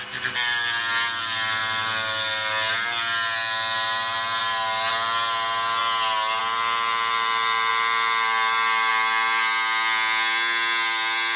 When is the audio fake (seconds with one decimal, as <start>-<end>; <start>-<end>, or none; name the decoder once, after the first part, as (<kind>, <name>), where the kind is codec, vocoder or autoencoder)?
none